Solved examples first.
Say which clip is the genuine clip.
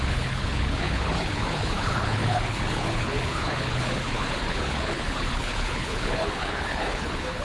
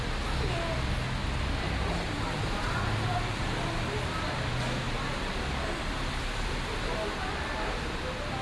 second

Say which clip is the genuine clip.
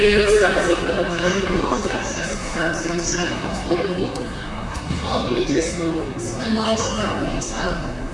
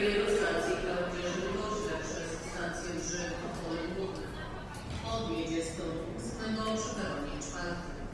second